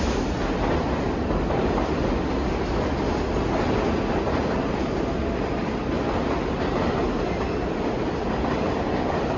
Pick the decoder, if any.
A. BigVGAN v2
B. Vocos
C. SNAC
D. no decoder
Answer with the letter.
D